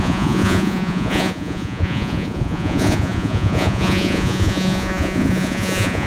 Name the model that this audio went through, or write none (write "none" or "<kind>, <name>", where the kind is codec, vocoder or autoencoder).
vocoder, Vocos